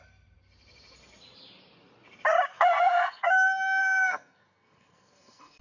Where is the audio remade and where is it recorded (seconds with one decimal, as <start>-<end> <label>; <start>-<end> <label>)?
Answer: 0.0-2.5 recorded; 2.5-3.3 remade; 3.3-3.8 recorded; 3.8-5.6 remade